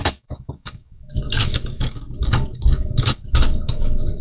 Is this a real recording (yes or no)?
no